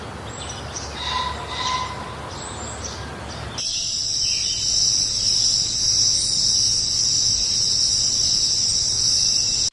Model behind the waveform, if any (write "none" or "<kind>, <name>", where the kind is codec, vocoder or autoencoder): none